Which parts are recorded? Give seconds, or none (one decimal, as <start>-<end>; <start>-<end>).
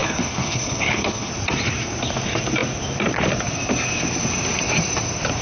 1.3-5.4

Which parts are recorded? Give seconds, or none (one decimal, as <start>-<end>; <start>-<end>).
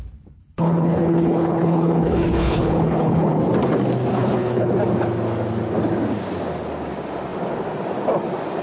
0.0-0.4; 3.4-4.1; 4.7-8.6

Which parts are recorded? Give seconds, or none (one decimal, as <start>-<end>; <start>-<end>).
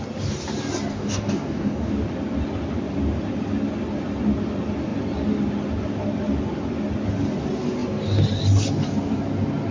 0.0-0.9; 1.9-9.7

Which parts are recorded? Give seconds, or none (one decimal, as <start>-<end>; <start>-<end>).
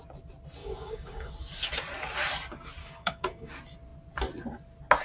0.0-0.6; 1.3-2.8; 3.5-5.0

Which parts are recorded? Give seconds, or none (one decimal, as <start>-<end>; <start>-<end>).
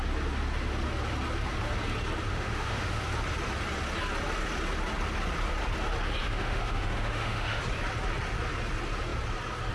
0.0-2.3; 3.0-6.2; 7.6-9.7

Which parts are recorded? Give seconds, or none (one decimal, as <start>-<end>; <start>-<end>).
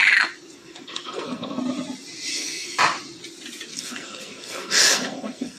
0.0-0.6; 1.6-2.3; 2.8-3.7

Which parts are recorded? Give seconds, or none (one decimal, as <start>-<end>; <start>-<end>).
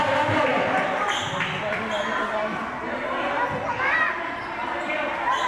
0.0-5.5